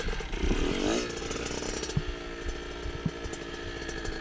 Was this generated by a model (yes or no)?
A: no